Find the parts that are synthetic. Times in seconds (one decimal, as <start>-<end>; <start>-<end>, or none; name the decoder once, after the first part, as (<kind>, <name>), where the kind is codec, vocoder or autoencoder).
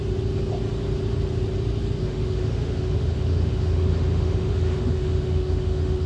2.0-6.1 (autoencoder, DAC-VAE)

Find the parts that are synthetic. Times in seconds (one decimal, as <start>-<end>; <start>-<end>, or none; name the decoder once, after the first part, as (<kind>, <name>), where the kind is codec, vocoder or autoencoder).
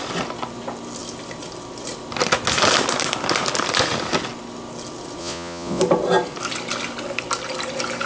5.2-5.8 (vocoder, Vocos)